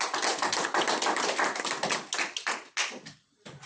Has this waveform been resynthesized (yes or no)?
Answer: no